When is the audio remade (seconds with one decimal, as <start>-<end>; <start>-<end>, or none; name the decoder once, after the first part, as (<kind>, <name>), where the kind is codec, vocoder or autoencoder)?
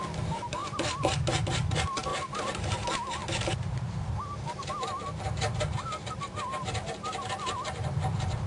0.0-8.5 (vocoder, BigVGAN v2)